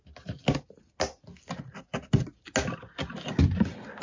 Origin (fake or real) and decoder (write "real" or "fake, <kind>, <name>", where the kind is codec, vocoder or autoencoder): real